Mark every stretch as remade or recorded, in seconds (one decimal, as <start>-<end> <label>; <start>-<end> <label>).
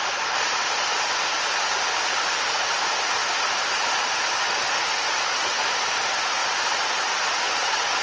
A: 0.0-8.0 recorded